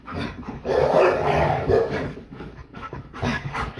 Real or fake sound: fake